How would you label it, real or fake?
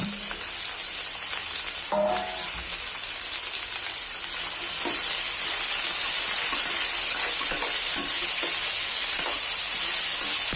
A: real